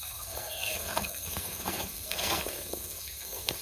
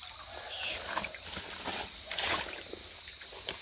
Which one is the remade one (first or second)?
first